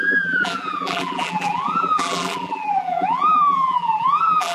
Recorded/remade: remade